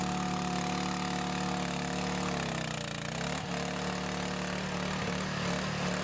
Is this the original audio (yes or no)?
yes